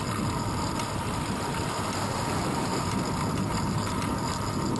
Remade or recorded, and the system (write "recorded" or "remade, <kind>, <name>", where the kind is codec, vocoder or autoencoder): recorded